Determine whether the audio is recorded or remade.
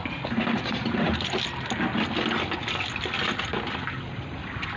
recorded